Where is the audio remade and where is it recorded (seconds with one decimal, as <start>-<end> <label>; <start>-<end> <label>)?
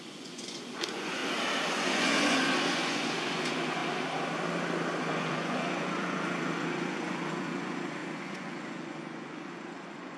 0.0-1.2 remade; 1.2-1.7 recorded; 1.7-3.8 remade; 3.8-5.0 recorded; 5.0-10.2 remade